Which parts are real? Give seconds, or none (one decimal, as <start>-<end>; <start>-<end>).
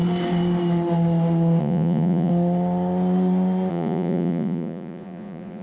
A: 0.0-1.6; 2.3-3.7